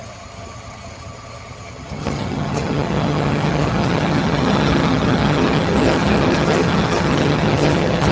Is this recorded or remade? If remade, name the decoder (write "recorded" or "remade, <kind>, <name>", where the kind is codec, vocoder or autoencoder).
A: remade, vocoder, HiFi-GAN